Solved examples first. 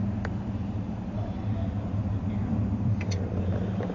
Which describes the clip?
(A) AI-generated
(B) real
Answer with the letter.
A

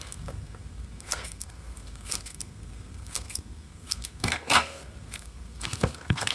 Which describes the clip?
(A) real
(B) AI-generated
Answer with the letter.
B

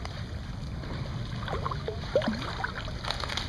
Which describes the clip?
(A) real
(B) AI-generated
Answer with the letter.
A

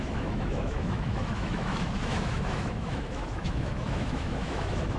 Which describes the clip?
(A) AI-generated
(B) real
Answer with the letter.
A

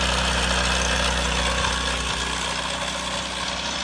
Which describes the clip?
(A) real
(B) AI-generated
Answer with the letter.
A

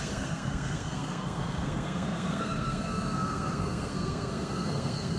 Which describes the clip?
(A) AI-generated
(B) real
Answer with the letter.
A